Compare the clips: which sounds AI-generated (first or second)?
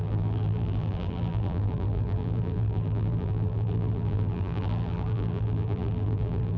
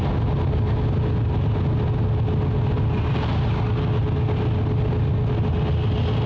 first